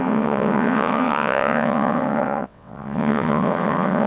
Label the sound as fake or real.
fake